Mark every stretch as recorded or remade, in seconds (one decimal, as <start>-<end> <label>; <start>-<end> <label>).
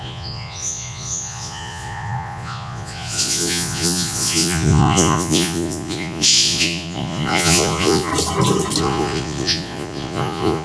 0.0-8.1 remade; 8.1-8.8 recorded; 8.8-10.6 remade